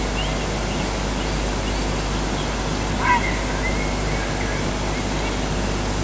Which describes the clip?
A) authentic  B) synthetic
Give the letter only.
A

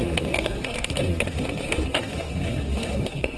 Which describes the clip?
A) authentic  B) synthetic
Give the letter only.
B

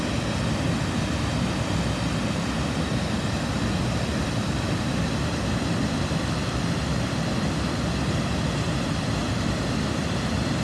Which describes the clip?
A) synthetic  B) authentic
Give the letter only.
B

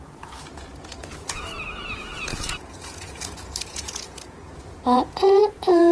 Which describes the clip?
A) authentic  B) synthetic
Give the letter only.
B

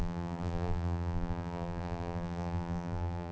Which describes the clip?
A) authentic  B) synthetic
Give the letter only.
B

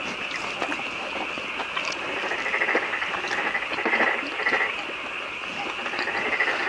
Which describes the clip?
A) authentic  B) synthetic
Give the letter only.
A